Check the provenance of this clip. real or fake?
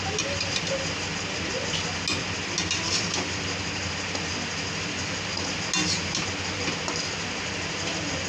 real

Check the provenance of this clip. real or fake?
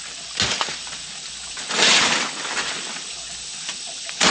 real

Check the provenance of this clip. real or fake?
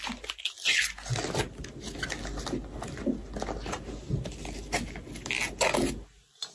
real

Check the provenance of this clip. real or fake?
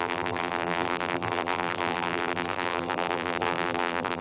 fake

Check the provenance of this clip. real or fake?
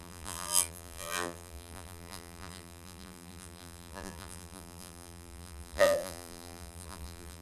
fake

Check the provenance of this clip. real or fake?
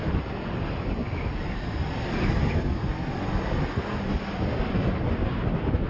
real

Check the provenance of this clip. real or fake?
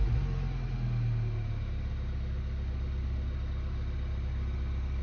real